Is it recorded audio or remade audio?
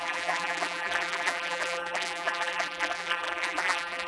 remade